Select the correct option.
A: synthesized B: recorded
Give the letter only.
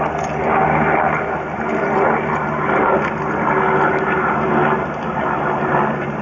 B